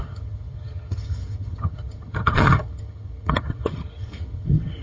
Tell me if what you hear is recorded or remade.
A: remade